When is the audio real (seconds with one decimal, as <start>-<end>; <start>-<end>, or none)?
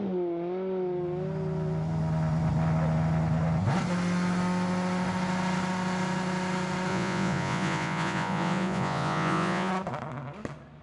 0.0-6.9; 9.7-10.8